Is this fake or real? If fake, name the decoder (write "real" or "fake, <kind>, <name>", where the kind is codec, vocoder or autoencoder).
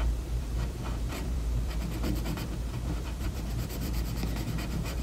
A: fake, vocoder, BigVGAN v2